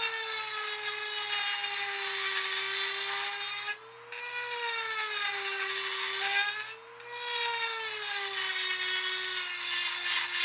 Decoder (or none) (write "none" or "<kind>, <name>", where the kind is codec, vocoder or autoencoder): none